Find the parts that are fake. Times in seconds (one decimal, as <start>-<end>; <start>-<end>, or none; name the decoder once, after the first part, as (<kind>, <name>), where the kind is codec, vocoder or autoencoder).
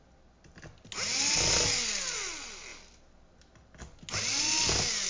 none